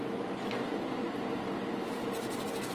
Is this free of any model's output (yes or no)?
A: yes